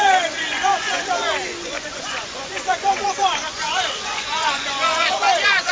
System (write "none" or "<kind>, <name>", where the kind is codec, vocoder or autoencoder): vocoder, Vocos